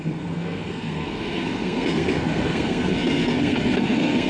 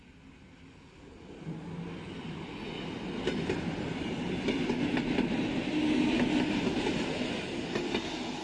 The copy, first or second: first